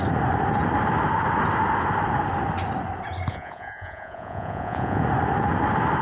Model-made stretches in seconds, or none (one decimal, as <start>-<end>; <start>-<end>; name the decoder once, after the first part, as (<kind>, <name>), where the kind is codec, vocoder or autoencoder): 3.3-5.0 (vocoder, Vocos)